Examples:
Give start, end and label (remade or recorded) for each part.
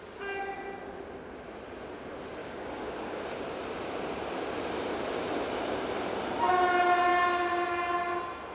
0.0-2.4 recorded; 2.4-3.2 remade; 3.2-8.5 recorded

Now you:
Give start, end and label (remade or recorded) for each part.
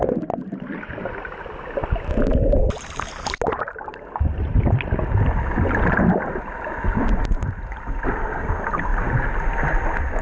0.0-10.2 recorded